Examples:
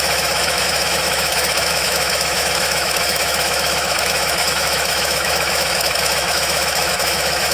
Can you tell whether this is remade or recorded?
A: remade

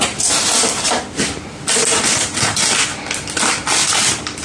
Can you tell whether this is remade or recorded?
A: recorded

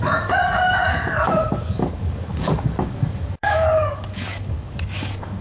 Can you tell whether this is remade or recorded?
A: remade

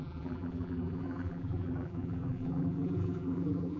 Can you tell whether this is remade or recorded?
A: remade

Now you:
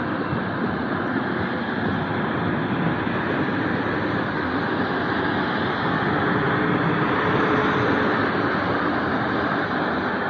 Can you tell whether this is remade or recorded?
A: recorded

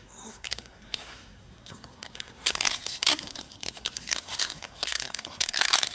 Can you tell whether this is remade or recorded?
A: remade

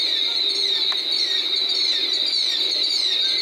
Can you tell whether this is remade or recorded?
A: remade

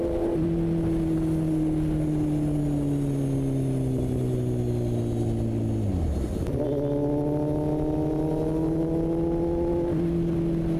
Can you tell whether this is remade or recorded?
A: recorded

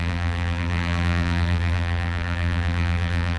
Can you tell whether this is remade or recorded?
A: remade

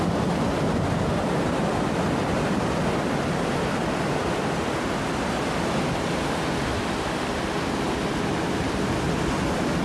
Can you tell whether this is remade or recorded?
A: recorded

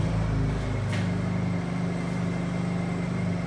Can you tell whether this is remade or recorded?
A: recorded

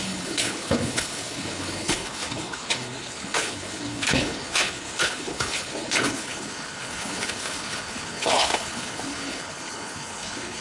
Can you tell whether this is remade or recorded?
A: remade